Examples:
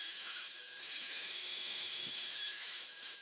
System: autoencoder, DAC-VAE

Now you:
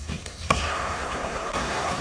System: codec, SNAC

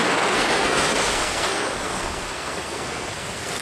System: codec, SNAC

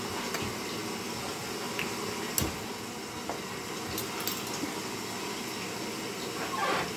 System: none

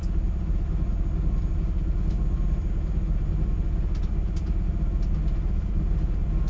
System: none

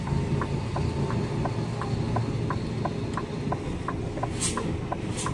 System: none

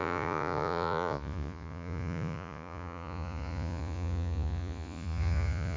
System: vocoder, Vocos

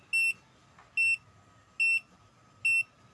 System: none